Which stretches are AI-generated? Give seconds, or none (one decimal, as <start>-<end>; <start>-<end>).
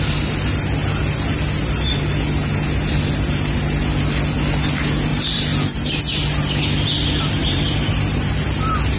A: 5.1-6.0; 7.4-8.3